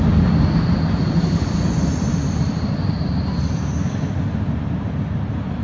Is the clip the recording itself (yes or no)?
yes